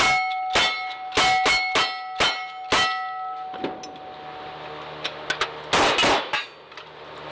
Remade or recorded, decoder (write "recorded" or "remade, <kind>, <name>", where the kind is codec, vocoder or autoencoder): recorded